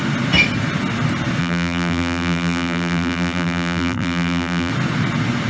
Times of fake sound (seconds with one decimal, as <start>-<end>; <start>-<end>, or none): 1.4-4.7

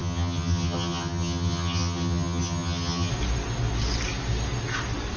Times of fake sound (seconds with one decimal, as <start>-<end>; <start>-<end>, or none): 0.0-3.1

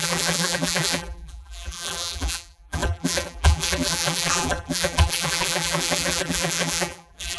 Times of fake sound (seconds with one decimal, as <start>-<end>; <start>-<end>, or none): 0.0-7.4

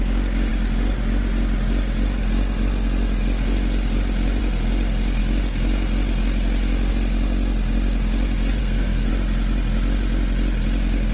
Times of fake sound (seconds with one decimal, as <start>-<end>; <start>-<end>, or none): 8.6-9.1

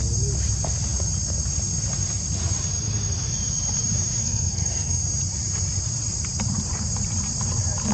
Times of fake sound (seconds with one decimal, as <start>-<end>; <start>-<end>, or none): 4.2-5.0

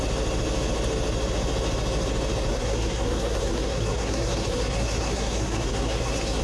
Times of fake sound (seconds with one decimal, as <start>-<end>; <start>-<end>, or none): 2.5-6.4